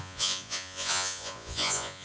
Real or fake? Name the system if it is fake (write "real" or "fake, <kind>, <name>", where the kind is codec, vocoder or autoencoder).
fake, vocoder, Vocos